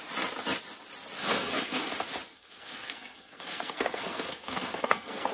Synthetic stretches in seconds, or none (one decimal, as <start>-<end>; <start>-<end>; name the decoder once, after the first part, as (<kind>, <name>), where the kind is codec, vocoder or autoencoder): 1.2-1.9 (codec, SNAC); 2.3-5.3